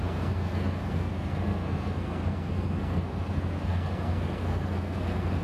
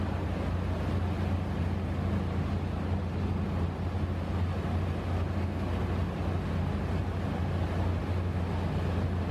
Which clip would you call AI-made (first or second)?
first